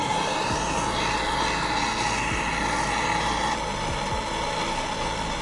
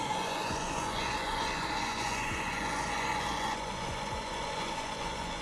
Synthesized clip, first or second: second